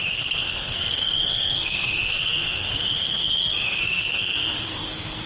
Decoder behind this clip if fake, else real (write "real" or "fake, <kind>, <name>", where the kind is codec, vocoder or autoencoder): fake, codec, SNAC